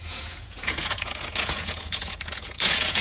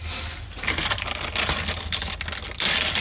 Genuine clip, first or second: second